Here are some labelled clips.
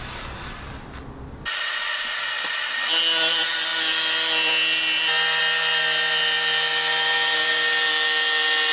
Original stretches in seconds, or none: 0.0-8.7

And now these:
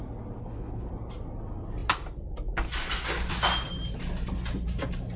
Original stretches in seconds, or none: 0.0-0.4; 0.9-5.2

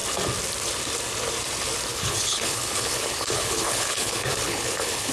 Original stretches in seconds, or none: 0.0-1.9

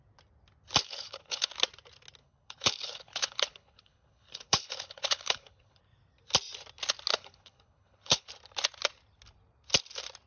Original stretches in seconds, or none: 0.0-0.8; 1.5-2.2; 5.8-7.1; 8.3-10.3